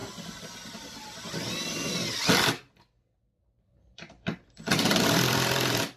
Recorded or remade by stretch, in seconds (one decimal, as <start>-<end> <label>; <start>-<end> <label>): 0.0-3.6 recorded; 3.6-6.0 remade

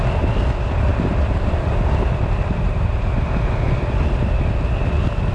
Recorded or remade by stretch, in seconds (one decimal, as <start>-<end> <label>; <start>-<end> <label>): 0.0-0.9 recorded; 0.9-4.1 remade; 4.1-5.3 recorded

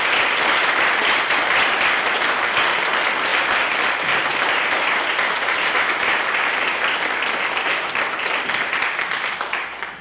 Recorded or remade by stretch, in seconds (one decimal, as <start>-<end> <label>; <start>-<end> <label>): 0.0-3.3 recorded; 3.3-6.2 remade; 6.2-10.0 recorded

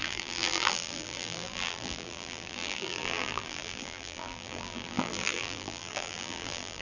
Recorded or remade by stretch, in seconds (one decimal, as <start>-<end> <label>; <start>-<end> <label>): 0.0-6.8 remade

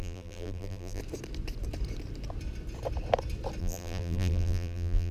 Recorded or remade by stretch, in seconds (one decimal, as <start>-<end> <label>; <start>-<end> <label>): 0.0-1.0 remade; 1.0-3.6 recorded; 3.6-5.1 remade

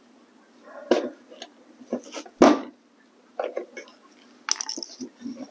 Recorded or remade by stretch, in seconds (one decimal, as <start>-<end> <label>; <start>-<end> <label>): 0.0-5.5 recorded

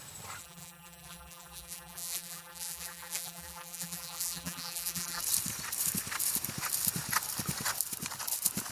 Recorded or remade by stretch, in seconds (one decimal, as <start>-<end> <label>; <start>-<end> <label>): 0.0-0.4 recorded; 0.4-5.2 remade; 5.2-8.7 recorded